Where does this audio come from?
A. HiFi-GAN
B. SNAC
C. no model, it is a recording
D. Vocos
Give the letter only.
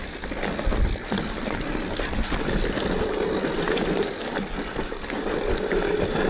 C